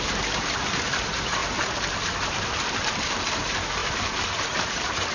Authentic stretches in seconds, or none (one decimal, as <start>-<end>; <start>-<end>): 1.4-2.1